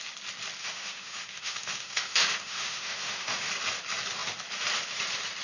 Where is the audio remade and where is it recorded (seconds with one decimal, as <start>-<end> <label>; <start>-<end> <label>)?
0.0-0.6 recorded; 0.6-3.5 remade; 3.5-5.4 recorded

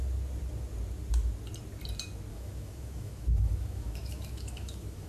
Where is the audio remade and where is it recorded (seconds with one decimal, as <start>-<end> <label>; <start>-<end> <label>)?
0.0-2.3 recorded; 2.3-5.1 remade

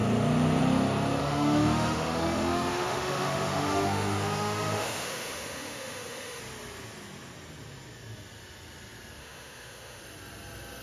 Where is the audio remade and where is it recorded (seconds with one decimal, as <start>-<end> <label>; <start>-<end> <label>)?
0.0-1.2 recorded; 1.2-6.4 remade; 6.4-9.2 recorded; 9.2-10.0 remade; 10.0-10.8 recorded

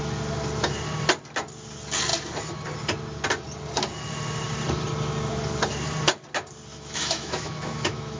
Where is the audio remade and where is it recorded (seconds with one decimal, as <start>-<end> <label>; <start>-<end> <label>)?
0.0-6.7 recorded; 6.7-8.2 remade

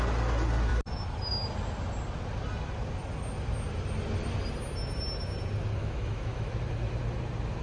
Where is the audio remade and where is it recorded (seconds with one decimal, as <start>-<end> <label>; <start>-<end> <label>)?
0.0-5.8 recorded; 5.8-6.5 remade; 6.5-7.6 recorded

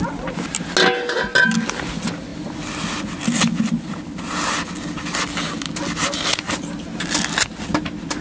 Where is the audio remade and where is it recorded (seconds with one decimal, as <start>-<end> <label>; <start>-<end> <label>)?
0.0-8.2 recorded

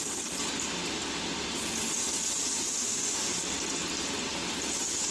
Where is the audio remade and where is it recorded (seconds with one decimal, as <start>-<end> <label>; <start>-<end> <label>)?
0.0-2.7 recorded; 2.7-3.4 remade; 3.4-5.1 recorded

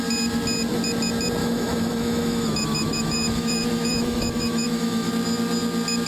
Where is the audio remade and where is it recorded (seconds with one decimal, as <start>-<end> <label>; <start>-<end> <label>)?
0.0-1.4 recorded; 1.4-5.1 remade; 5.1-6.1 recorded